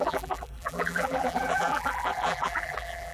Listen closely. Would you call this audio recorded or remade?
remade